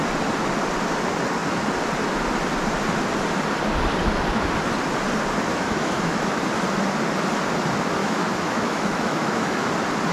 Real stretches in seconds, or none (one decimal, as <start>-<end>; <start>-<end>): 0.0-5.5; 6.4-8.0; 9.7-10.1